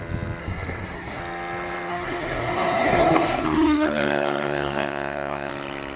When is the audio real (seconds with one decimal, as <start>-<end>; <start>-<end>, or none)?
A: 0.0-0.4; 1.2-1.9; 5.5-6.0